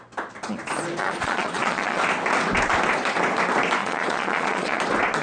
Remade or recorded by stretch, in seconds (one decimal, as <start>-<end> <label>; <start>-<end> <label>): 0.0-1.0 recorded; 1.0-2.0 remade; 2.0-3.8 recorded; 3.8-4.8 remade; 4.8-5.2 recorded